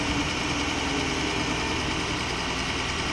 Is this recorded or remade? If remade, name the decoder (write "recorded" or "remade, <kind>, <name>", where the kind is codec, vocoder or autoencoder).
recorded